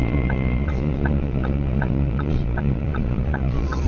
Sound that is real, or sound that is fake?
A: fake